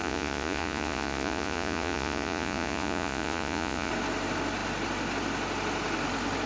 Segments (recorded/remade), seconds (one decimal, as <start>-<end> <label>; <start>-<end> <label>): 0.0-3.9 remade; 3.9-6.5 recorded